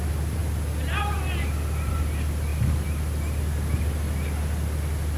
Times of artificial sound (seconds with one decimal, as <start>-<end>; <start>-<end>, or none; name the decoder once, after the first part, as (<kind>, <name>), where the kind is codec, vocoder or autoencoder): none